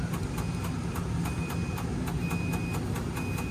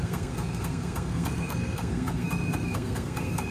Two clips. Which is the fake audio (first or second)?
second